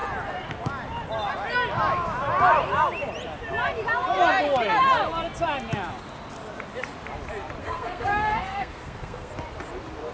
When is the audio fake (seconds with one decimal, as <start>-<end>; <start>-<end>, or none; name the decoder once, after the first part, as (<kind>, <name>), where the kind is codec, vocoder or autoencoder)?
7.6-9.3 (codec, SNAC)